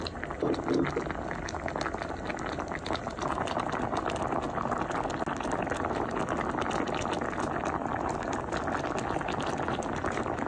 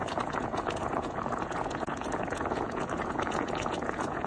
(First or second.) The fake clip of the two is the second